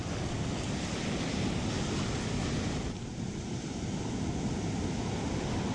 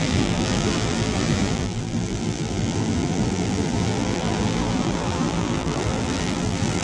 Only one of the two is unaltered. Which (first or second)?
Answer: first